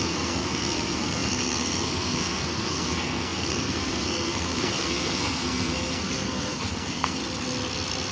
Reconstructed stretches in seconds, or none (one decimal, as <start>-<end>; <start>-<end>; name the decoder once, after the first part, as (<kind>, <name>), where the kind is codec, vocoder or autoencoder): 0.0-7.2 (codec, SNAC)